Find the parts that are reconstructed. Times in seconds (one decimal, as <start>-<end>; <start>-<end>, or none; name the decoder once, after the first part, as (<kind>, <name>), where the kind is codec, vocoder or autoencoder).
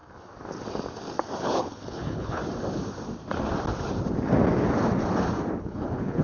1.4-2.4 (codec, HILCodec); 5.7-6.2